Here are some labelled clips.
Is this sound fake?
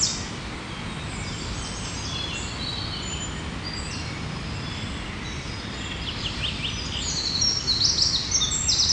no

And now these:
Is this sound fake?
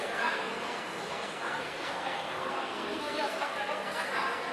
yes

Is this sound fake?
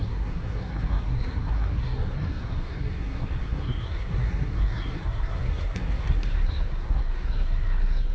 yes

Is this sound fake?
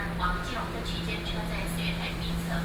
no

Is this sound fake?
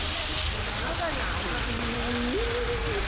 no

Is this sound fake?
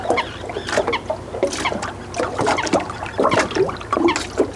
no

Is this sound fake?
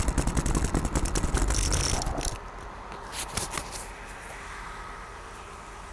no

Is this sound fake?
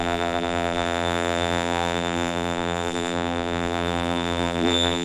yes